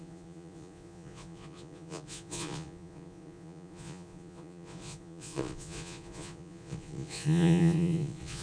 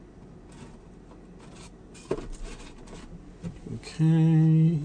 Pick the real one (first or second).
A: second